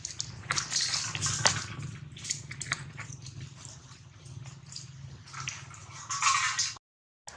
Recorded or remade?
recorded